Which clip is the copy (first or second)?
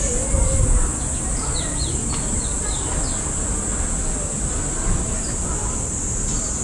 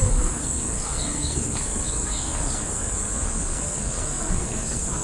second